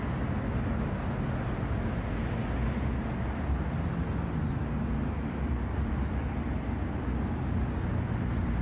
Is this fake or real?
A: real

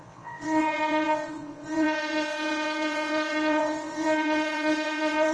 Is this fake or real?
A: fake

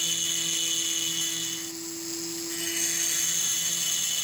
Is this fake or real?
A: real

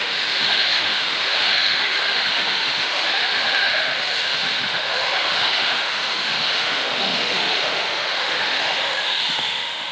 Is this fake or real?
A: fake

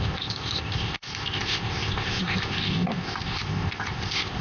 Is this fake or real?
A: fake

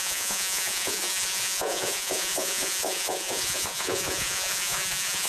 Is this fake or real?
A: fake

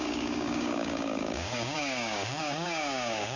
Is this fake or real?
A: fake